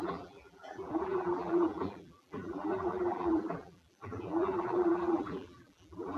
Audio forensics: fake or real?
fake